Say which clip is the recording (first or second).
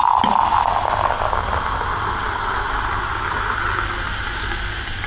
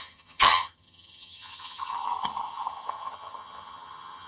first